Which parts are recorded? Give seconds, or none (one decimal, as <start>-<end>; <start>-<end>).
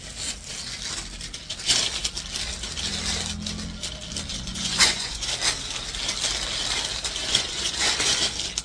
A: 0.0-4.3; 5.3-7.2; 8.2-8.6